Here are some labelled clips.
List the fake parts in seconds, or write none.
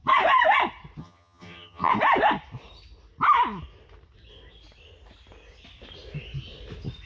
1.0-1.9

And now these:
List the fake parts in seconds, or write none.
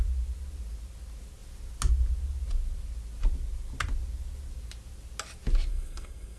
5.7-6.4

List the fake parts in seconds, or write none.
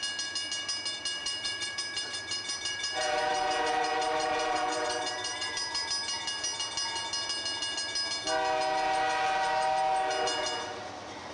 1.2-5.9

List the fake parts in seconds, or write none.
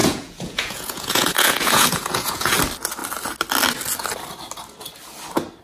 0.0-2.6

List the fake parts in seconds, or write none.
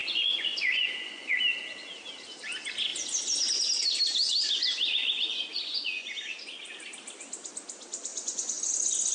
0.0-1.4; 5.0-6.1; 8.1-8.7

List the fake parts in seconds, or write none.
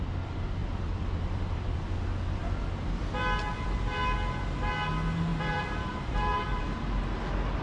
0.6-1.8; 5.3-6.6